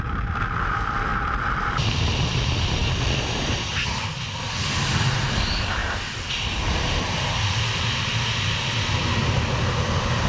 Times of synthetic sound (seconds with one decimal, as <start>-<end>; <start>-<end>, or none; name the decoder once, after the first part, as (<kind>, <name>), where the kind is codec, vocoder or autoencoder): none